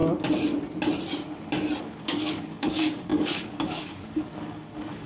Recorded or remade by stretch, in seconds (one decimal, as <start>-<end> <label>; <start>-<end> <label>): 0.0-1.8 recorded; 1.8-5.1 remade